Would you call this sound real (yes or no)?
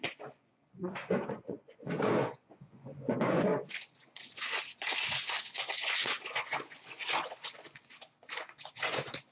no